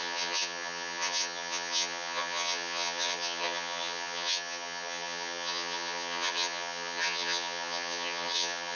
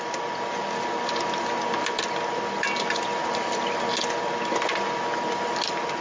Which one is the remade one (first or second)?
first